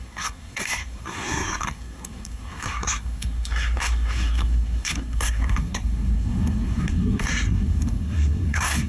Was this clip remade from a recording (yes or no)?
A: yes